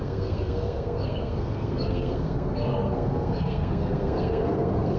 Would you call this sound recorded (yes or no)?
no